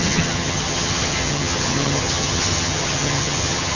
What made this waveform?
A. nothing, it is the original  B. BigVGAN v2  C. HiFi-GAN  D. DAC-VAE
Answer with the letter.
C